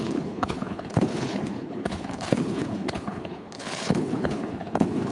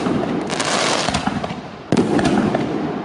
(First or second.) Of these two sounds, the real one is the second